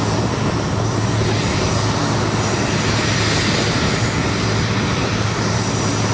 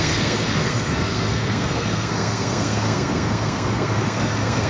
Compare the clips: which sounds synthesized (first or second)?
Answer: second